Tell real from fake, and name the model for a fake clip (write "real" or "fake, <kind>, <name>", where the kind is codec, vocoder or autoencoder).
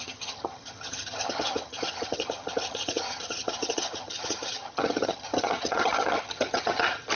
fake, vocoder, HiFi-GAN